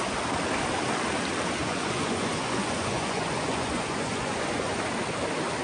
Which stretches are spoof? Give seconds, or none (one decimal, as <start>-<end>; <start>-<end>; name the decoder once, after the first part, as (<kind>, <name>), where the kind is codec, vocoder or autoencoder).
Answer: 1.6-4.8 (vocoder, Vocos)